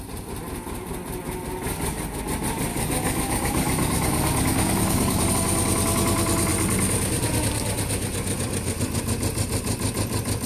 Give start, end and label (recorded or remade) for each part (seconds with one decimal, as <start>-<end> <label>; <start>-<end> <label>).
0.0-2.7 recorded; 2.7-5.3 remade; 5.3-10.5 recorded